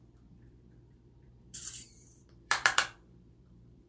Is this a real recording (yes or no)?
no